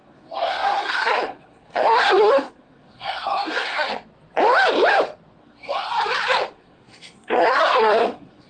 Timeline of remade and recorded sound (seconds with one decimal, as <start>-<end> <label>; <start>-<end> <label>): 0.0-3.9 remade; 3.9-5.4 recorded; 5.4-5.9 remade; 5.9-6.5 recorded; 6.5-8.5 remade